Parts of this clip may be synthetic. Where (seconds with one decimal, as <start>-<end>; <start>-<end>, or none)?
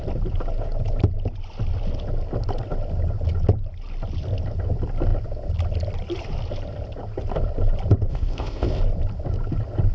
8.1-8.8